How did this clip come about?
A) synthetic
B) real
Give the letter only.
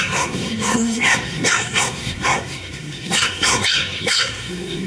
A